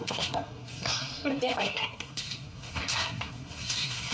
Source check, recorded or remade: remade